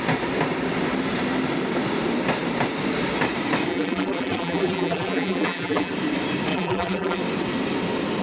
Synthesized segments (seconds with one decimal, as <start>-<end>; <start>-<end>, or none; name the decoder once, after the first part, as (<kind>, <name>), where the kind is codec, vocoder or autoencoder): 3.7-5.9 (vocoder, BigVGAN v2); 6.5-7.2